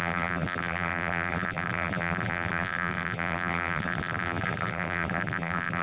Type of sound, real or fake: fake